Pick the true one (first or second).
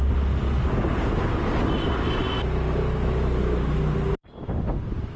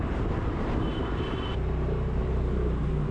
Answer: first